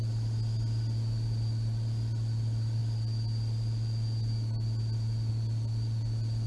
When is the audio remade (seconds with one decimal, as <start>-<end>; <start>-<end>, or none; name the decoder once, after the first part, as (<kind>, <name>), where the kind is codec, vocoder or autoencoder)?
none